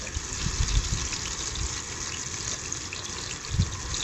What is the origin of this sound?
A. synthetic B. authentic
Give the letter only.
B